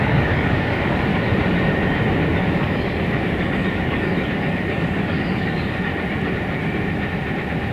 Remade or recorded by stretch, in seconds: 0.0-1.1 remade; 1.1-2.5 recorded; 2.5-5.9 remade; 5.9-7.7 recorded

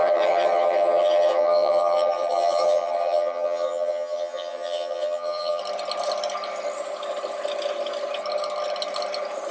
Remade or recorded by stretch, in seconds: 0.0-5.6 remade; 5.6-9.5 recorded

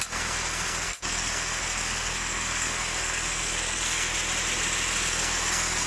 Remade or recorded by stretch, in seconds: 0.0-4.1 remade; 4.1-5.1 recorded; 5.1-5.9 remade

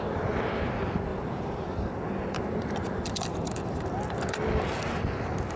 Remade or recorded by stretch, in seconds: 0.0-1.1 recorded; 1.1-4.5 remade; 4.5-5.6 recorded